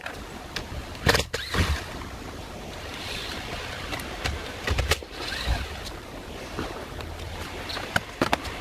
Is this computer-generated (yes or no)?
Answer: yes